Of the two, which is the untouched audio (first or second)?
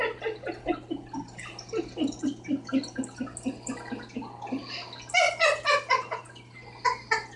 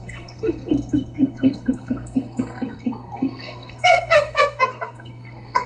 first